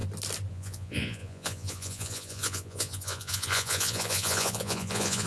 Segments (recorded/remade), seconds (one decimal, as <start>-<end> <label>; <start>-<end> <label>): 0.0-0.5 recorded; 0.5-5.3 remade